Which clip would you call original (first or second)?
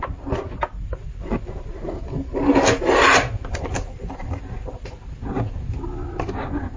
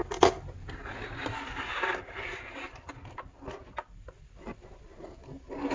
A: second